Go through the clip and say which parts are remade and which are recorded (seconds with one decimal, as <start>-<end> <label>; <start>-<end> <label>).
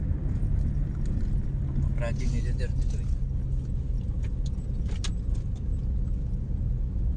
0.0-7.2 recorded